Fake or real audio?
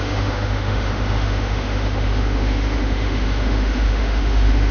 fake